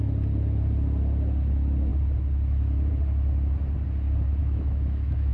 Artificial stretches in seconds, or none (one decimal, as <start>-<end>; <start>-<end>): 4.4-5.3